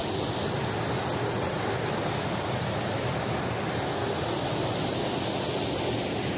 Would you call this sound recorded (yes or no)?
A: yes